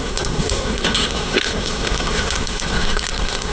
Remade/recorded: remade